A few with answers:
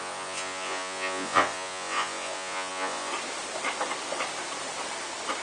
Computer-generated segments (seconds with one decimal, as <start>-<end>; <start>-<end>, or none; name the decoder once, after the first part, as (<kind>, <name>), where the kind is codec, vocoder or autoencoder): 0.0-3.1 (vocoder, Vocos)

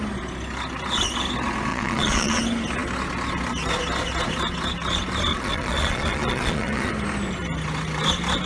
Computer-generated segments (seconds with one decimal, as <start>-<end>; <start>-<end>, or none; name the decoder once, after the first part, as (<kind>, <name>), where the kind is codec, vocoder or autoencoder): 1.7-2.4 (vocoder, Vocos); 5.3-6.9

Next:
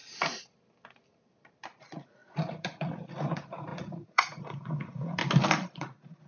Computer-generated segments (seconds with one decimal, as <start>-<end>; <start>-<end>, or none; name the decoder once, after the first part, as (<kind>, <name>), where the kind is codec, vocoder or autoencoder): 1.8-5.2 (vocoder, Vocos); 5.8-6.3

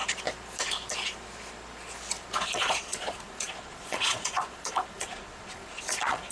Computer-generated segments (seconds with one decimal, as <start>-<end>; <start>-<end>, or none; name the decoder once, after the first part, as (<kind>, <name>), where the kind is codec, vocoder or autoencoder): 2.4-6.3 (vocoder, Vocos)